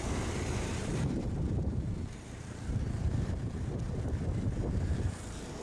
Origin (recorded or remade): remade